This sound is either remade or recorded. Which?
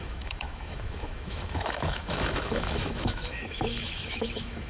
remade